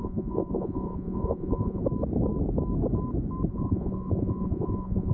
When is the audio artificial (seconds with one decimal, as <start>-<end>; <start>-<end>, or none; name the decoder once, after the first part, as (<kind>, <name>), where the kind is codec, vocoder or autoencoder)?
0.0-1.8 (vocoder, Vocos); 3.5-5.1